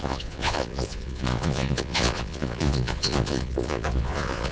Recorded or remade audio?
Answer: remade